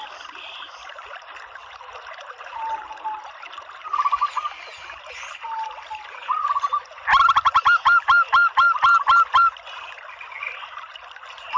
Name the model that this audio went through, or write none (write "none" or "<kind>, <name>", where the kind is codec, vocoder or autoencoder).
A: none